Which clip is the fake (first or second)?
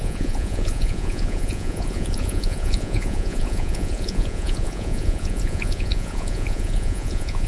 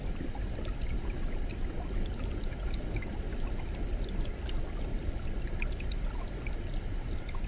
first